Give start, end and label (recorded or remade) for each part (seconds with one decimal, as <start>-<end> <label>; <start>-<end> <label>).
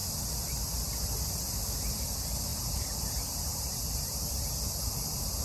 0.0-2.5 recorded; 2.5-4.9 remade; 4.9-5.4 recorded